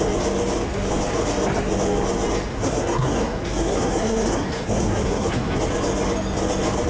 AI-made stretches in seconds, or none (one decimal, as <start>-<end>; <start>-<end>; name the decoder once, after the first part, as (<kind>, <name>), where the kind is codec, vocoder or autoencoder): 2.5-5.6 (codec, SNAC)